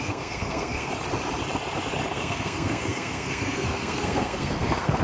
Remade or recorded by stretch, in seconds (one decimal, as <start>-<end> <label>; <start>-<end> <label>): 0.0-0.9 remade; 0.9-2.1 recorded; 2.1-5.0 remade